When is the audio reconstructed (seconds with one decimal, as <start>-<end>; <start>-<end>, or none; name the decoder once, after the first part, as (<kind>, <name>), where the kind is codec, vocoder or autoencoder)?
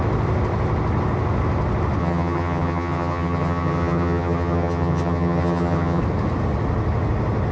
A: 2.0-6.0 (vocoder, HiFi-GAN)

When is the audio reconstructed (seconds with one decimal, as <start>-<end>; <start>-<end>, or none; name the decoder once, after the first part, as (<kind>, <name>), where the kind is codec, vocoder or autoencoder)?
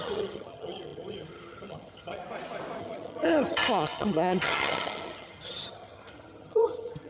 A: 0.0-2.2 (vocoder, HiFi-GAN); 2.8-7.1